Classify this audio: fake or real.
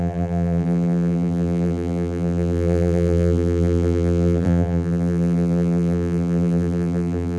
fake